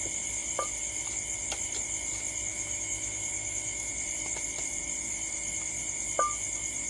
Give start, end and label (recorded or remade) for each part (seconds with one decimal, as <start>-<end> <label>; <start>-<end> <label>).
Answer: 0.0-2.5 recorded; 2.5-3.9 remade; 3.9-6.9 recorded